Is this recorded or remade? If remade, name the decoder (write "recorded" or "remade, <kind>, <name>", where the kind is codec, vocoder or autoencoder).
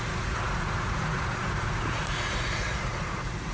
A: remade, vocoder, Vocos